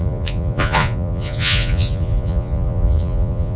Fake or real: fake